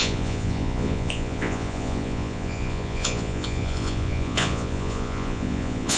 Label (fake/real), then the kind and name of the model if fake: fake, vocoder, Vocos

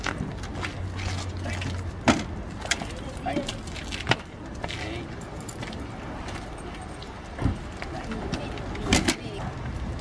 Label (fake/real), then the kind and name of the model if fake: real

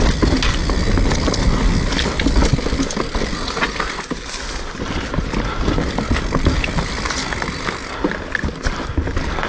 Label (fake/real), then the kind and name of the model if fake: real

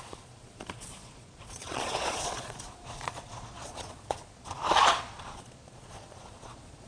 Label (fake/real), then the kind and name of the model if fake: fake, vocoder, Vocos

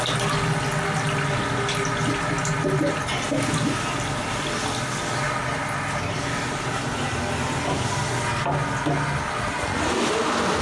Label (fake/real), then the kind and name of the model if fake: real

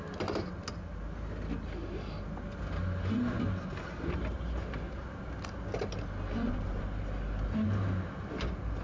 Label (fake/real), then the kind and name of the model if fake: real